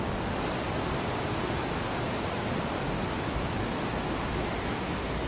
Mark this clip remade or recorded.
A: recorded